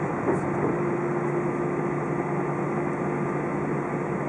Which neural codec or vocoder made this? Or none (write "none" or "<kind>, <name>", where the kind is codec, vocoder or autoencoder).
none